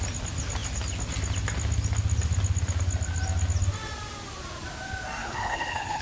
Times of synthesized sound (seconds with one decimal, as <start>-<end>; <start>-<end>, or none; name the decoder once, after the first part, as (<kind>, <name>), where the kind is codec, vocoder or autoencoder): 5.2-6.0 (codec, HILCodec)